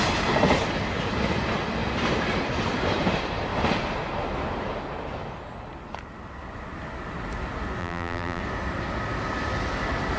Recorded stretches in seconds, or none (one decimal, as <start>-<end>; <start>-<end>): 0.0-7.8; 8.4-10.2